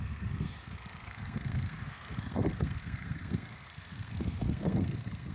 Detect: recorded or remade remade